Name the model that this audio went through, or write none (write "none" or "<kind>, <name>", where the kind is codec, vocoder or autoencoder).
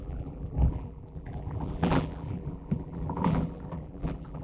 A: vocoder, BigVGAN v2